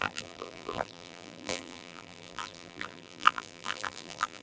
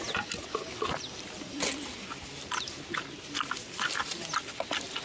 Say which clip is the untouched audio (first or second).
second